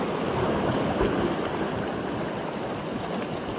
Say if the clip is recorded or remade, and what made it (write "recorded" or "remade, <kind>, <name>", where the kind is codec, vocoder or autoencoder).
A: recorded